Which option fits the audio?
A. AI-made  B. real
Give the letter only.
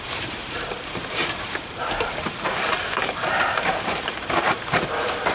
A